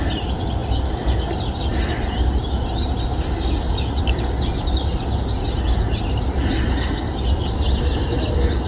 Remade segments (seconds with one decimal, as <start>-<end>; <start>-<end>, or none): none